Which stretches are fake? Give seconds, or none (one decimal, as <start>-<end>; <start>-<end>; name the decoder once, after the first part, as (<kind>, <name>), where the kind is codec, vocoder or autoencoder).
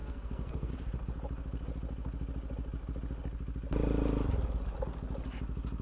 0.0-0.7 (codec, SNAC)